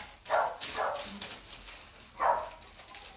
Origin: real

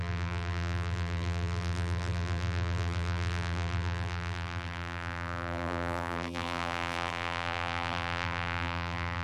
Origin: fake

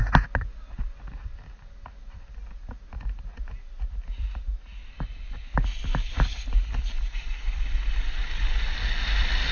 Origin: real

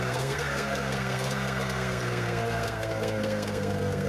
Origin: fake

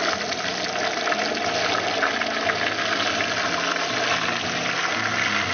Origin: real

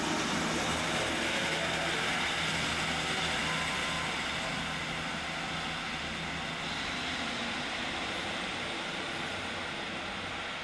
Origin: real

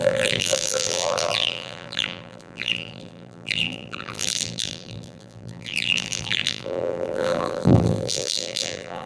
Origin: fake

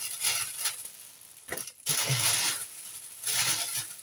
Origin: real